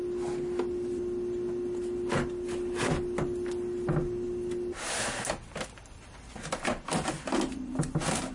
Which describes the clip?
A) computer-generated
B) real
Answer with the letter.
B